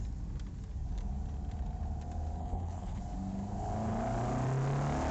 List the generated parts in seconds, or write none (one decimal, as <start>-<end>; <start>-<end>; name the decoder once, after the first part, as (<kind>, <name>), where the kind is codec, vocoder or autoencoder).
2.4-3.0 (codec, HILCodec)